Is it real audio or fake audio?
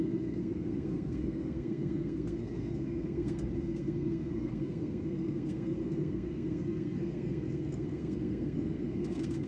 fake